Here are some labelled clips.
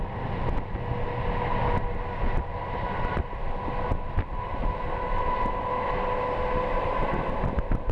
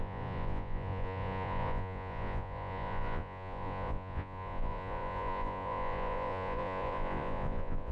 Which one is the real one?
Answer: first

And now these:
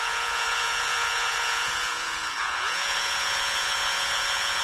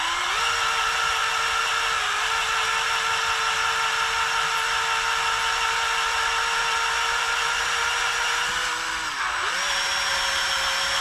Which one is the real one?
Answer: second